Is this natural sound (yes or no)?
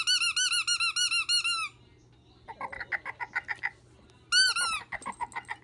yes